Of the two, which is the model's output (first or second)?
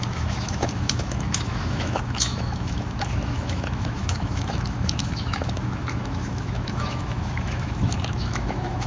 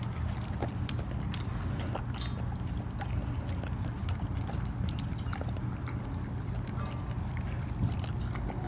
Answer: first